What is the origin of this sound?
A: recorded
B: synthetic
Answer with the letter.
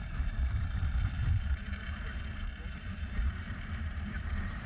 B